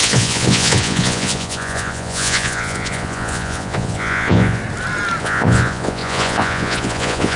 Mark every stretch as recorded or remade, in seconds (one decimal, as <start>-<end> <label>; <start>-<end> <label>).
0.0-4.6 remade; 4.6-5.2 recorded; 5.2-7.4 remade